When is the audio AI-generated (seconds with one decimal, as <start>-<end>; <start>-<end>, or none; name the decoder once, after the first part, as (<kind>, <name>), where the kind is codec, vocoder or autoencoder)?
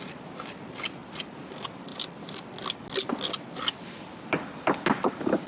none